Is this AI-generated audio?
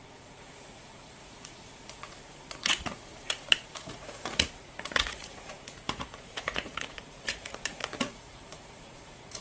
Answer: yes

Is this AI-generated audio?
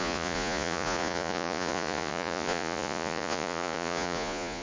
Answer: yes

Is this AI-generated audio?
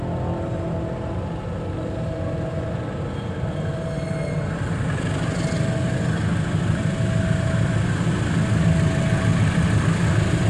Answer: no